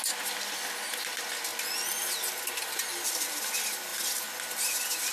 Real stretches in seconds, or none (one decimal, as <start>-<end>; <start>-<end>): 0.0-5.1